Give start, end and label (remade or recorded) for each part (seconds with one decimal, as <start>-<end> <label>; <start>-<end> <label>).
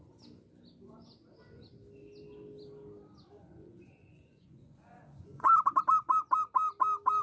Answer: 0.0-3.4 recorded; 3.4-5.5 remade; 5.5-7.2 recorded